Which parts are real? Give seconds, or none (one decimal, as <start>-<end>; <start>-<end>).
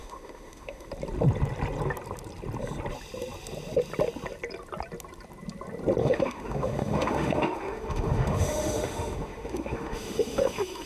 0.9-6.0